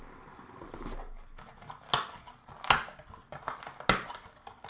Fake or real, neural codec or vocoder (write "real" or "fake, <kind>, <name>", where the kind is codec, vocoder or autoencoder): real